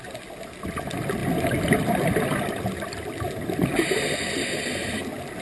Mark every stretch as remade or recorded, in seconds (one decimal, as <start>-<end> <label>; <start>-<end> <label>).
0.0-5.4 recorded